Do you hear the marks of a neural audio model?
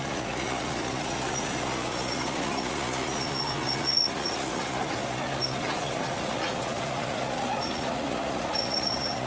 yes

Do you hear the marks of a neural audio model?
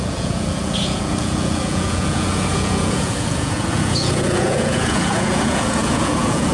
yes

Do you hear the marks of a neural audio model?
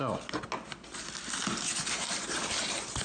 no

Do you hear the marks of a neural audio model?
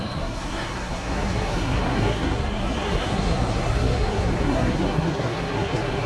yes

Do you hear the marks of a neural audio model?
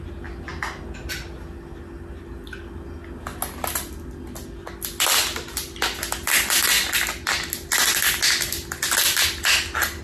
no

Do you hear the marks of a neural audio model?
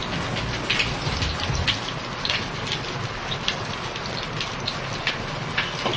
no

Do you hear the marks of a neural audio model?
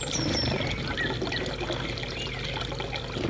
no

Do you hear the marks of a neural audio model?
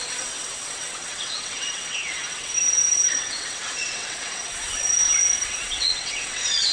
yes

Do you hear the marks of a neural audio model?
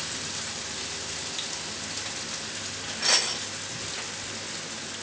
no